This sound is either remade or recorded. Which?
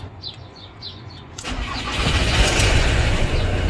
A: remade